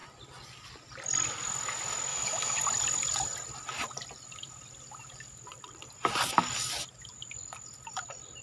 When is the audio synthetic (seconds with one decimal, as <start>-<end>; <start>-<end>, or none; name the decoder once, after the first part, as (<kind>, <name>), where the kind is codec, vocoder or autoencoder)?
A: 2.1-2.6 (autoencoder, DAC-VAE)